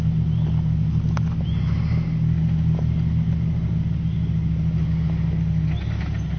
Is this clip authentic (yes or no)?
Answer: yes